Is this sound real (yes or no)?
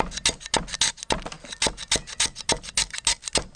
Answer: yes